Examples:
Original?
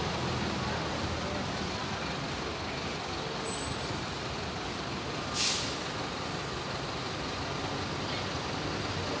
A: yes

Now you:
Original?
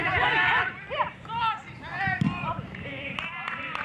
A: no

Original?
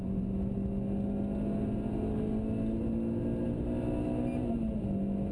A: yes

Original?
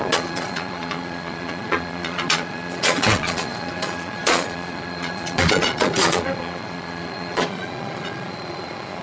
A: no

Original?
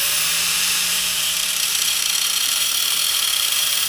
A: no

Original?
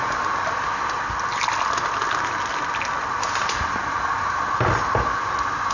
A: yes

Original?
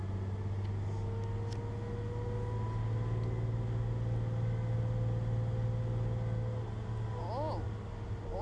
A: yes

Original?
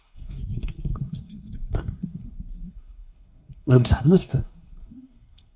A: no